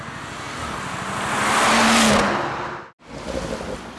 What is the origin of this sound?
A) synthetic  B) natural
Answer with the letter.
B